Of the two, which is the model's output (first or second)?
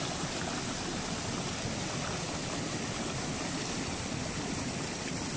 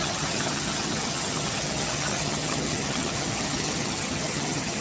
second